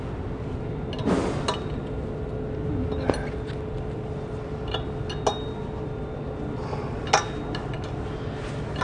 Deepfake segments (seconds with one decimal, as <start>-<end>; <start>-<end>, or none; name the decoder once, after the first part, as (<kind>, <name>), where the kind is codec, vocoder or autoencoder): 3.7-4.8 (vocoder, BigVGAN v2)